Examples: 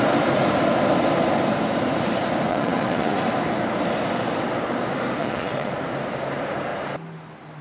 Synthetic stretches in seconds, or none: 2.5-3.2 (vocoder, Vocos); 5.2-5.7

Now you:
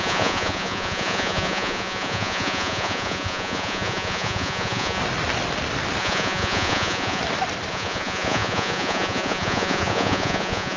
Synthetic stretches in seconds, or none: 0.0-5.0 (vocoder, Vocos); 6.0-7.2; 7.7-10.8

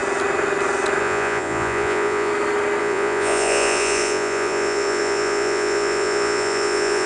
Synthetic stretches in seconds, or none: 1.0-2.3 (vocoder, Vocos); 2.8-7.1

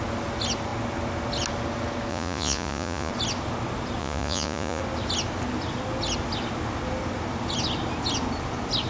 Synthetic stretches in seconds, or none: 2.1-3.1 (vocoder, Vocos); 4.0-4.8

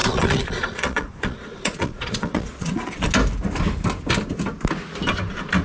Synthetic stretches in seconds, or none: 0.0-3.1 (vocoder, Vocos)